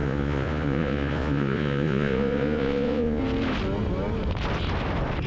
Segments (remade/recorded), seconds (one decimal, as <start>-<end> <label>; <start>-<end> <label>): 0.0-3.2 remade; 3.2-5.3 recorded